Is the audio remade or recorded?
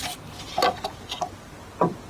recorded